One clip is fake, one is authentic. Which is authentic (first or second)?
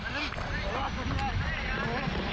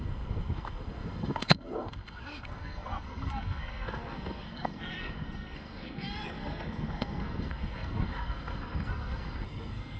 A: first